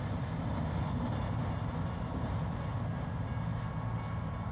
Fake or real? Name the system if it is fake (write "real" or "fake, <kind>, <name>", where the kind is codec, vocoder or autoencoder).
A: real